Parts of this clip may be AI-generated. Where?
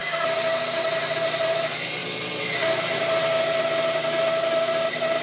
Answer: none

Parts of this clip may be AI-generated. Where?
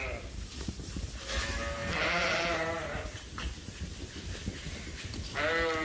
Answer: none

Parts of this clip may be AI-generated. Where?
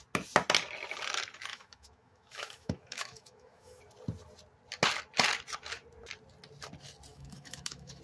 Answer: 1.5-3.8 (autoencoder, DAC-VAE); 7.1-8.0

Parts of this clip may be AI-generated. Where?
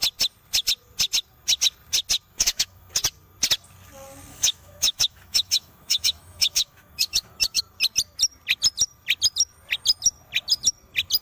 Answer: 2.3-2.9 (autoencoder, DAC-VAE); 4.3-7.6